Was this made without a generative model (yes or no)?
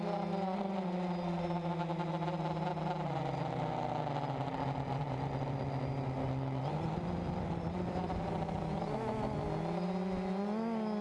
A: yes